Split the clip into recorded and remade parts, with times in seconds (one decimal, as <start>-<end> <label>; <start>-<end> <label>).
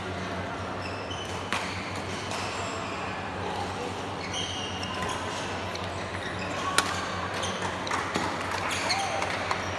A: 0.0-9.8 recorded